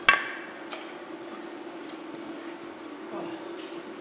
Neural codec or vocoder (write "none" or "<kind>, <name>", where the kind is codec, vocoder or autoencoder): none